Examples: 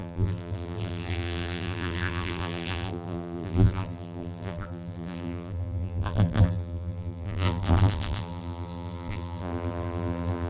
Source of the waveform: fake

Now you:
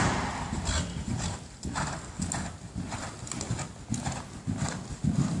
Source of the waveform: real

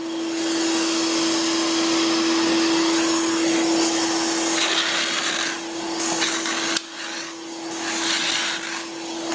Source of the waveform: real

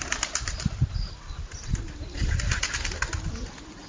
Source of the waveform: real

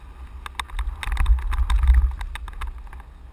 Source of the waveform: real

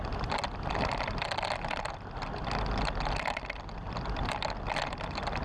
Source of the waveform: real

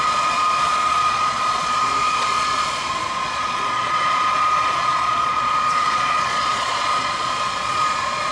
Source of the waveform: fake